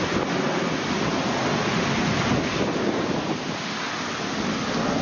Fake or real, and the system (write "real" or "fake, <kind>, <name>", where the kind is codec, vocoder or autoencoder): real